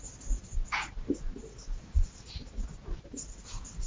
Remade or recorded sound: recorded